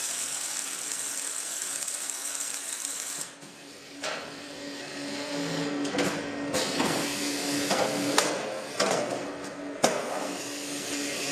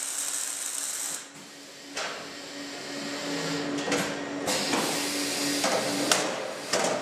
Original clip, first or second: second